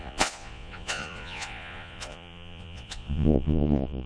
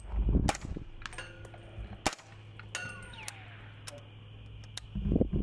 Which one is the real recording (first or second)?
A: second